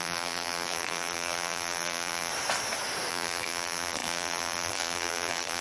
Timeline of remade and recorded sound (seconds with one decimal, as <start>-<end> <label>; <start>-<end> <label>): 0.0-2.3 remade; 2.3-3.1 recorded; 3.1-5.6 remade